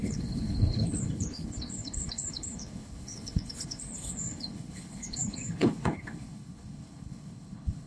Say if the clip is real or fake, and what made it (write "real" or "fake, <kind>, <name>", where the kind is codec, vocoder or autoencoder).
fake, codec, HILCodec